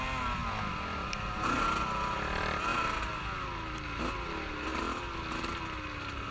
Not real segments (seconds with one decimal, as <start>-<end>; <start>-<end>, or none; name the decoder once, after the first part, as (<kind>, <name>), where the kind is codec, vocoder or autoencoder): none